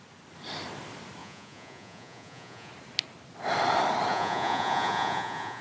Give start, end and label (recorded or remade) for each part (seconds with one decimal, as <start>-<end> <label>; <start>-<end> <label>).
0.0-1.2 recorded; 1.2-2.7 remade; 2.7-4.1 recorded; 4.1-5.6 remade